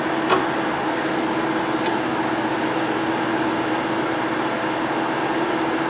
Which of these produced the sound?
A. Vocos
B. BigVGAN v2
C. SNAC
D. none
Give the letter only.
D